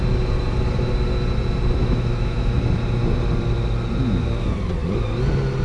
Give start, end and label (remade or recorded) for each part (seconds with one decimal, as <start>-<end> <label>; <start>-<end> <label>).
0.0-1.8 recorded; 1.8-2.6 remade; 2.6-5.6 recorded